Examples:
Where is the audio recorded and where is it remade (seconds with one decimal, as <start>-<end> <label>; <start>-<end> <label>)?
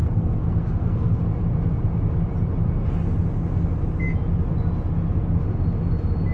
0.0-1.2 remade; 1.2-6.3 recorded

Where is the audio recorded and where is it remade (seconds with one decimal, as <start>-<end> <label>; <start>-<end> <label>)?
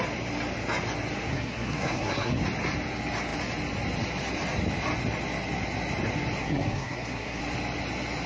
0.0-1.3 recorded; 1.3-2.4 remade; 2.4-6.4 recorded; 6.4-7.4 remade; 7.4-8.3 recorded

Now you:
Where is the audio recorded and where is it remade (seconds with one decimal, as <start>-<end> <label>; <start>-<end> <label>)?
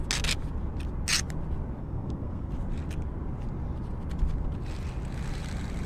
0.0-1.8 recorded; 1.8-2.5 remade; 2.5-5.9 recorded